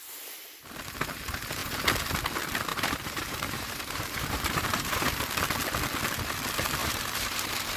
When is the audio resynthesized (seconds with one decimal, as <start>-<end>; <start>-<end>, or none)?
2.7-5.2; 6.8-7.8

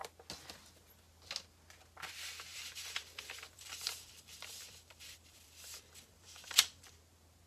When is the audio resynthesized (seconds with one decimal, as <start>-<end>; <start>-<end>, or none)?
2.5-7.0

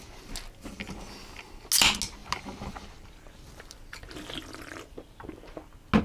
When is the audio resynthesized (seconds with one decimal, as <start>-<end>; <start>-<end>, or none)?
none

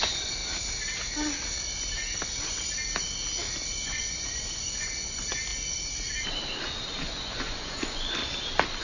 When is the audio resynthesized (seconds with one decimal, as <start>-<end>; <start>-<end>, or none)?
0.0-0.4; 3.8-5.5; 7.0-8.2

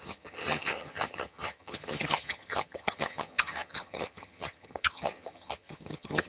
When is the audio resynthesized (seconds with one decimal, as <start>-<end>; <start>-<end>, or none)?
0.0-6.3

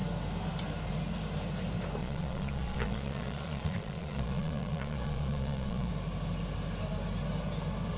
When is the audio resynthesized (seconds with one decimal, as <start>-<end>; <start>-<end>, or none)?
2.0-5.9

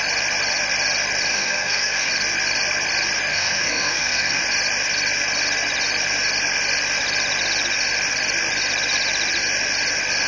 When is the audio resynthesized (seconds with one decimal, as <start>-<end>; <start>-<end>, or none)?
1.3-2.1; 3.3-4.4

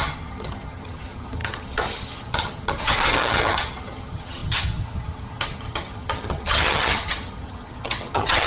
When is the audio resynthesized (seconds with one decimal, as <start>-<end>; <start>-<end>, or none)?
0.0-8.5